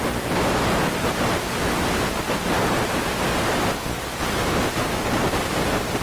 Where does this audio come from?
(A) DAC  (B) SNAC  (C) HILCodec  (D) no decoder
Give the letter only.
D